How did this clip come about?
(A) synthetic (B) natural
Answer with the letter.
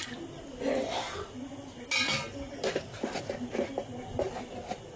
B